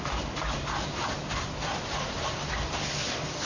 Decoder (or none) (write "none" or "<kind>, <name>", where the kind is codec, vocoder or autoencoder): vocoder, BigVGAN v2